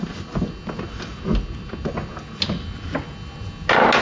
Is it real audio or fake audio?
real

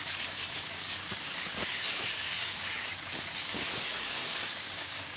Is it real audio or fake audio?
fake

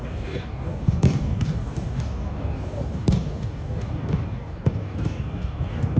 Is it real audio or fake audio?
fake